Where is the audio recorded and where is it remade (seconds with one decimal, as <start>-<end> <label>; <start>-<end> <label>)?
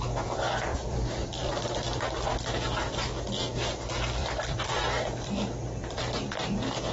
0.0-0.7 recorded; 0.7-1.5 remade; 1.5-4.2 recorded; 4.2-6.4 remade; 6.4-6.9 recorded